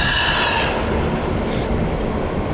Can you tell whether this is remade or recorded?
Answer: recorded